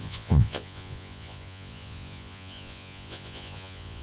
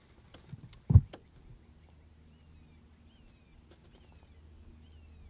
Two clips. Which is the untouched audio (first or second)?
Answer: second